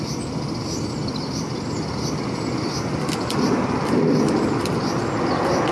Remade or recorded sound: recorded